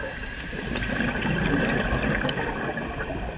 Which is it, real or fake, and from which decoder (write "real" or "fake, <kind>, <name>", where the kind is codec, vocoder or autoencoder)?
real